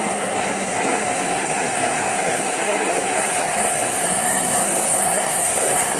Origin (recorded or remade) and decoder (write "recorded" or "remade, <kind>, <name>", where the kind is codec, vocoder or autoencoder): remade, codec, SNAC